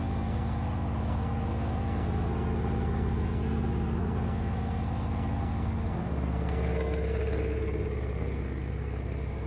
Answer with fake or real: fake